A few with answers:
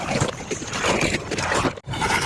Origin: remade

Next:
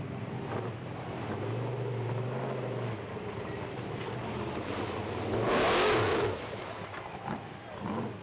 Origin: recorded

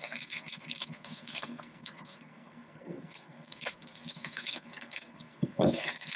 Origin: remade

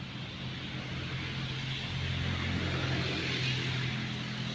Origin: recorded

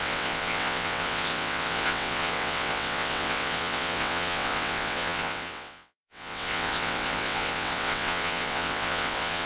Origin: remade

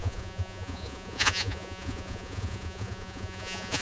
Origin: remade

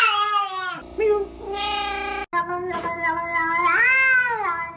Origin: recorded